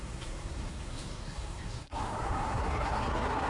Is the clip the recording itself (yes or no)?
no